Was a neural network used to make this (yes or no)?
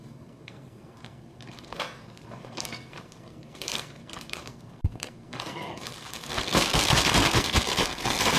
yes